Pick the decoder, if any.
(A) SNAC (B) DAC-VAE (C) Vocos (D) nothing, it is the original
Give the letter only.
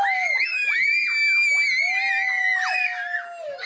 D